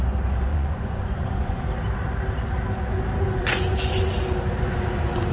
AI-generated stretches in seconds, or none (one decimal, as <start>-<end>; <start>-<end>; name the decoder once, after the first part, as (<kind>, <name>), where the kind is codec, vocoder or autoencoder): 0.5-1.6 (vocoder, Vocos); 3.4-4.1